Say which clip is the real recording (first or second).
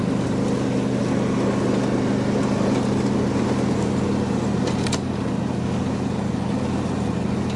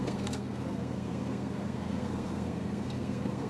first